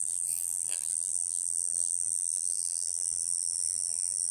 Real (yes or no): no